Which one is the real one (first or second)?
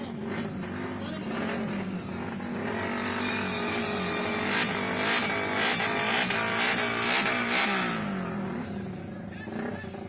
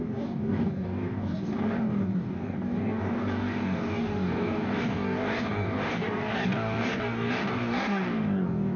first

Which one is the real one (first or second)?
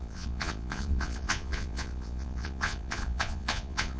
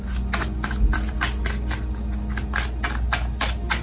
second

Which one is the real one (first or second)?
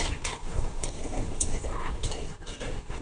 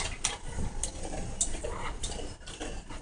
second